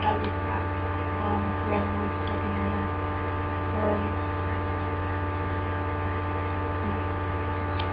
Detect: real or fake real